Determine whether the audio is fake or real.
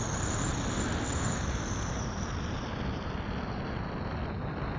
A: real